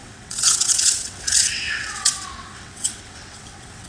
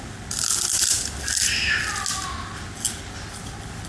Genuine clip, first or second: second